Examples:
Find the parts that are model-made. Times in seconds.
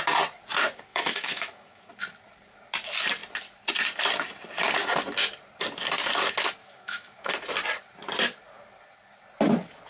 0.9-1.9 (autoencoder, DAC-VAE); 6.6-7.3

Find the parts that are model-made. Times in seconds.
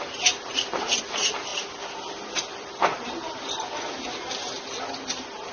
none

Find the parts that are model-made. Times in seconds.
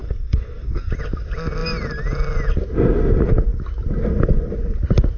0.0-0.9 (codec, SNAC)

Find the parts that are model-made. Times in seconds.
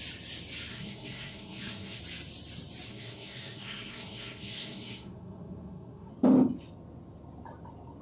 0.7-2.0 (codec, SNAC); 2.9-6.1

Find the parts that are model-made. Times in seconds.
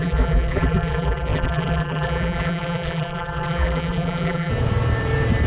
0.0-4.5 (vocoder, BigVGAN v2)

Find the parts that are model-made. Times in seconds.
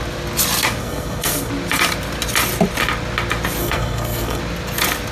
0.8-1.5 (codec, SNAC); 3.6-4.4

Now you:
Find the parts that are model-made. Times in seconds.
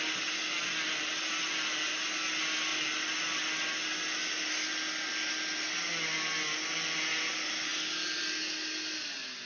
none